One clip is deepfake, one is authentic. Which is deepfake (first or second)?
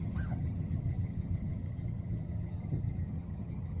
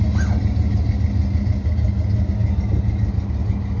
first